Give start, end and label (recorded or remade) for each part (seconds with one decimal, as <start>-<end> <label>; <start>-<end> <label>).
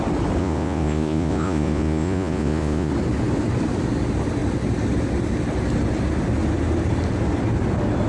0.0-0.4 recorded; 0.4-2.9 remade; 2.9-8.1 recorded